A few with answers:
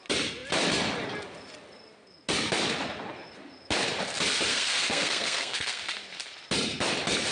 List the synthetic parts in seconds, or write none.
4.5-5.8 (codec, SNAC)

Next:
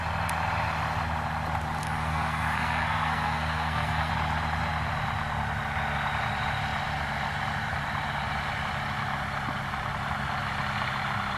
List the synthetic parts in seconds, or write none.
1.8-4.1 (codec, SNAC)

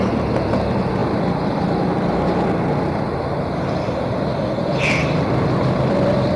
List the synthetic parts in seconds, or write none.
none

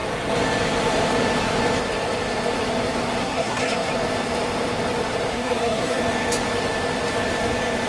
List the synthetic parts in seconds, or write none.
3.2-3.9 (codec, SNAC); 5.3-6.0

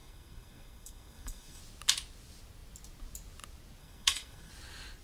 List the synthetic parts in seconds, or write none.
0.0-1.6 (codec, SNAC); 3.8-4.5